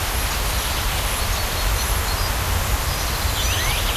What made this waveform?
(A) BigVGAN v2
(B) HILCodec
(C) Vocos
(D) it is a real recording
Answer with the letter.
D